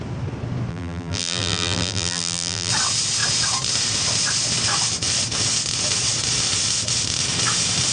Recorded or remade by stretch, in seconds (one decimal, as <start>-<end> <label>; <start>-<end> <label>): 0.0-0.7 recorded; 0.7-2.7 remade; 2.7-7.9 recorded